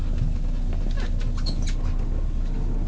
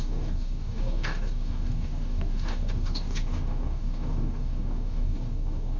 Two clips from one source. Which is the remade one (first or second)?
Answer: second